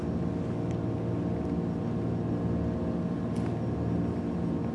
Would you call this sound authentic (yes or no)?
yes